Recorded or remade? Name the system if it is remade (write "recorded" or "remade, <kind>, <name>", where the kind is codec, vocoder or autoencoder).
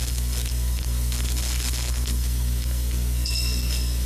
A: remade, codec, SNAC